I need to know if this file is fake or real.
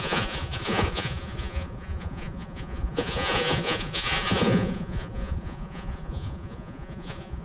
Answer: fake